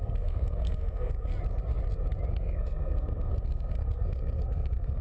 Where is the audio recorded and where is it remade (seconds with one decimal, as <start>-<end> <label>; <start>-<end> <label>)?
0.0-1.3 remade; 1.3-2.3 recorded; 2.3-5.0 remade

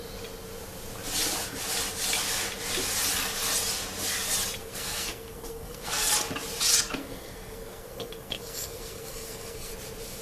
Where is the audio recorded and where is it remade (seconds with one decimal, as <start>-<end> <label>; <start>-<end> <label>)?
0.0-4.6 recorded; 4.6-6.1 remade; 6.1-6.7 recorded; 6.7-9.7 remade; 9.7-10.2 recorded

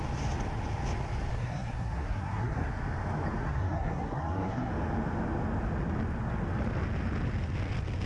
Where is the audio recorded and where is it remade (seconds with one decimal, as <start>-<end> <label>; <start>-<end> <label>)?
0.0-1.3 recorded; 1.3-2.7 remade; 2.7-3.4 recorded; 3.4-4.7 remade; 4.7-8.1 recorded

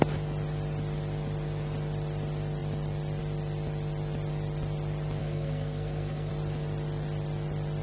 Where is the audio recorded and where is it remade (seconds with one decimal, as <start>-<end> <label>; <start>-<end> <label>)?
0.0-5.2 recorded; 5.2-6.3 remade; 6.3-7.8 recorded

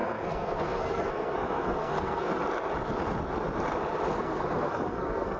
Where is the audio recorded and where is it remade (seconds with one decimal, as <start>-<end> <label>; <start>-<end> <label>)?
0.0-2.3 remade; 2.3-4.1 recorded; 4.1-5.4 remade

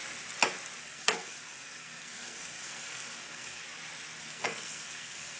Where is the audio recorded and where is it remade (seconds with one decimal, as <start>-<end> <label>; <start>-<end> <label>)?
0.0-0.8 recorded; 0.8-3.6 remade; 3.6-4.2 recorded; 4.2-5.4 remade

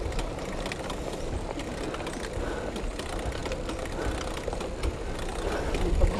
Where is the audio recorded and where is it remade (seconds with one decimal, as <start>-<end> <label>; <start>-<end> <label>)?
0.0-6.2 recorded